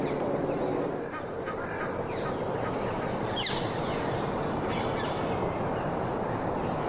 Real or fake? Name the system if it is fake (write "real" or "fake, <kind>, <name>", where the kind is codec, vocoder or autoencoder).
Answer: real